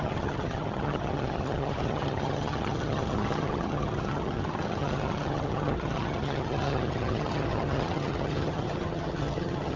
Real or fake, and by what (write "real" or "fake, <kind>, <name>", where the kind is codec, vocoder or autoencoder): fake, vocoder, HiFi-GAN